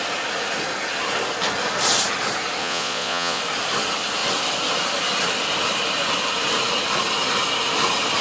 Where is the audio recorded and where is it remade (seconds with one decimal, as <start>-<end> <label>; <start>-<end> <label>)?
0.0-2.6 recorded; 2.6-3.4 remade; 3.4-8.2 recorded